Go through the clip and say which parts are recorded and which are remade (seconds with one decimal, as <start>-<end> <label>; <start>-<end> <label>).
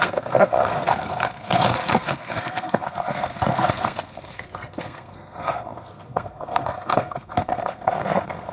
0.0-8.5 remade